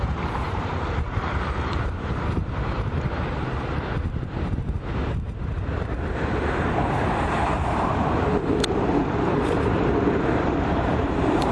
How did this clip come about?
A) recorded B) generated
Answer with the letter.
B